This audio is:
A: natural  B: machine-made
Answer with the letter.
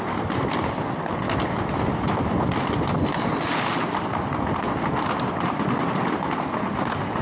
A